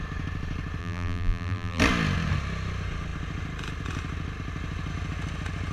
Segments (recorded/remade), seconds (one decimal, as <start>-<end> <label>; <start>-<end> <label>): 0.0-0.8 recorded; 0.8-1.8 remade; 1.8-5.7 recorded